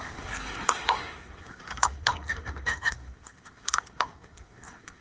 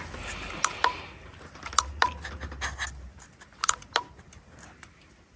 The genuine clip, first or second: second